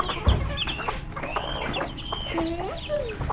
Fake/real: real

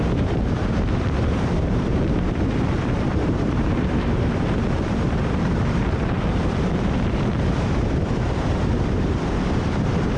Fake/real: fake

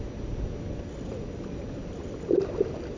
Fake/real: real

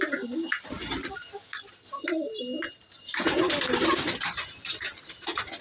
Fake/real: real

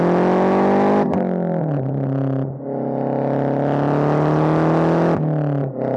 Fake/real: real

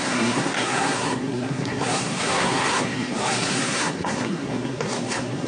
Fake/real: fake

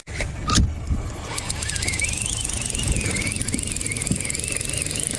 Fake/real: real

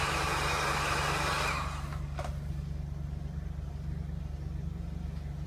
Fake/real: real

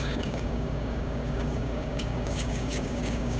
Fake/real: fake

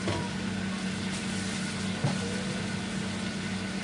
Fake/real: real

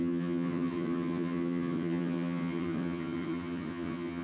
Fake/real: fake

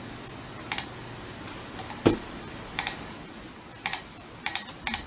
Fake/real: real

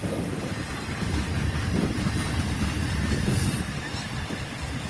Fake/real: fake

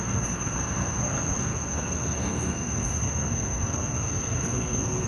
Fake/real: fake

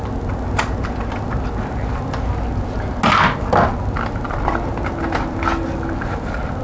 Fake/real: real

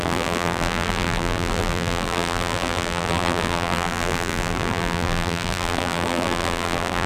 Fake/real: fake